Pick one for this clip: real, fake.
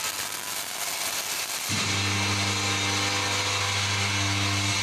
real